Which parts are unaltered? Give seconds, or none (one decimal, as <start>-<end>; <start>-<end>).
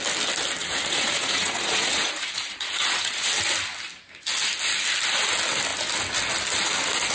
0.0-0.6; 3.3-7.1